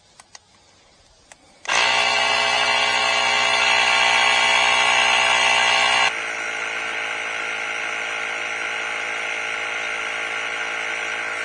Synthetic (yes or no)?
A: no